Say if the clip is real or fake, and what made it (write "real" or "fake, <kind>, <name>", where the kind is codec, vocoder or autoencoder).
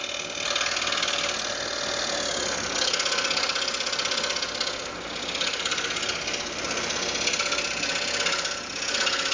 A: real